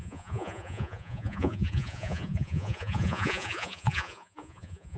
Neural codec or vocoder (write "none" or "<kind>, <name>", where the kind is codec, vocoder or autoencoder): vocoder, Vocos